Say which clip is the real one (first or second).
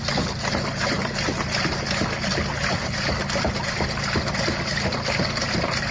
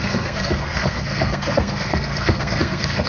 first